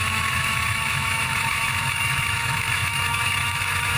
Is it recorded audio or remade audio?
remade